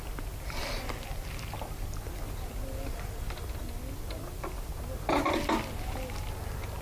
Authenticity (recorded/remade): recorded